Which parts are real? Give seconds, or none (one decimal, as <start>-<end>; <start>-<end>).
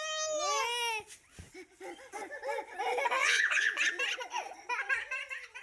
0.0-3.2; 3.8-5.6